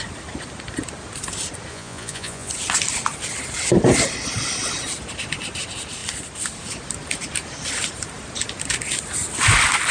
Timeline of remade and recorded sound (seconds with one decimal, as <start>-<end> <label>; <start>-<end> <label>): 0.0-1.7 recorded; 1.7-2.5 remade; 2.5-9.9 recorded